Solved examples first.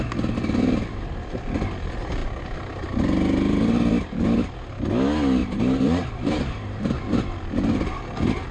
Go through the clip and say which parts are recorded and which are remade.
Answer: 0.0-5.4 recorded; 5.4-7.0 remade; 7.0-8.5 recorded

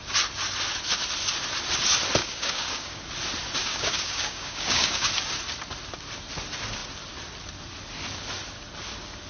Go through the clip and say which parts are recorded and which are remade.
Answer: 0.0-2.2 recorded; 2.2-3.0 remade; 3.0-3.6 recorded; 3.6-5.1 remade; 5.1-9.3 recorded